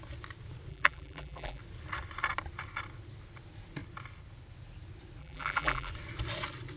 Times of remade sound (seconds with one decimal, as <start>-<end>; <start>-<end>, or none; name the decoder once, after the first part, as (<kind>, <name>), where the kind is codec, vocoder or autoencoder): 0.7-1.6 (vocoder, BigVGAN v2); 5.2-5.9